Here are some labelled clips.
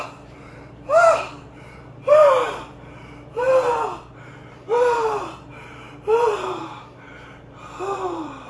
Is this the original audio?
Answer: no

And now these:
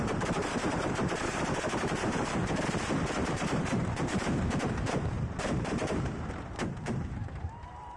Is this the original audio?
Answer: no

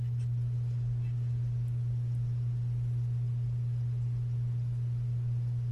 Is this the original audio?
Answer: yes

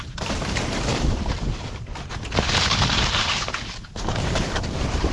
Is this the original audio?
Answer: no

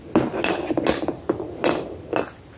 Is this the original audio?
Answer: yes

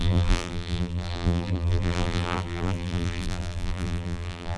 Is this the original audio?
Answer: no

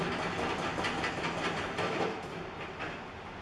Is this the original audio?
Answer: yes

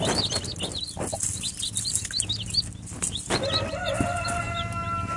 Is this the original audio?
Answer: yes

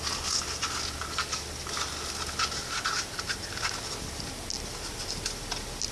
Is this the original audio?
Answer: yes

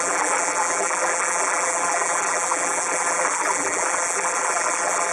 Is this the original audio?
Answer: no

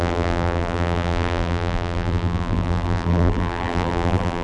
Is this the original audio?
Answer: no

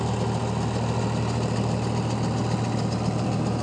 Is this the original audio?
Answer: yes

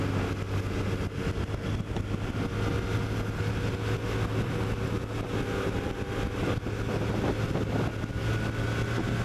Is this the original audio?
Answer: yes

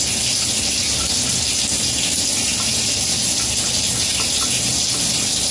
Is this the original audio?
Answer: yes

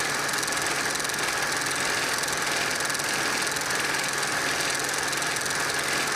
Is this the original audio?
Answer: yes